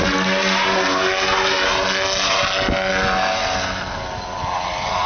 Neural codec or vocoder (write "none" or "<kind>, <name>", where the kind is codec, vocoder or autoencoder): none